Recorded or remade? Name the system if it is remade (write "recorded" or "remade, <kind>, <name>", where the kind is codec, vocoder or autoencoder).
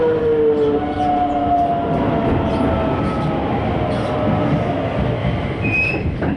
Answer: recorded